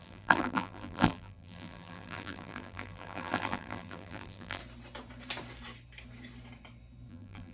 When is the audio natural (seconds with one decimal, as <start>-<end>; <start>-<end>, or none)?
4.6-7.1